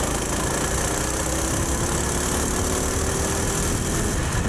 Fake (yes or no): no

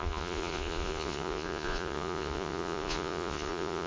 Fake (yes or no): yes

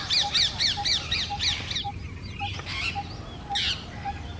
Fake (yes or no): no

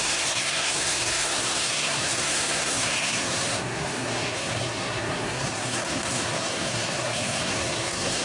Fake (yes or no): yes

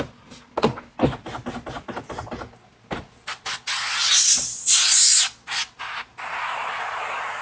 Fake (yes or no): no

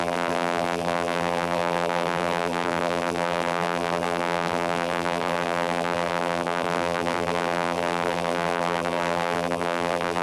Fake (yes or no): yes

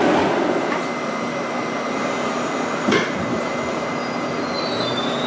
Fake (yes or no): no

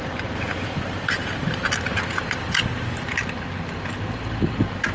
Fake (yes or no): no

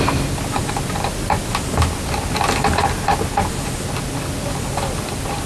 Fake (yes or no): no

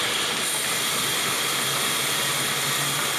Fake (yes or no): no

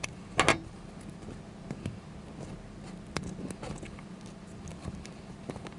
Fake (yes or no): no